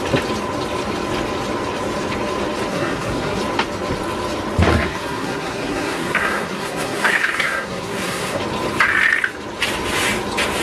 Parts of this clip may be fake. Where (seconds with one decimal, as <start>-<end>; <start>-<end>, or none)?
2.7-3.4; 4.7-8.4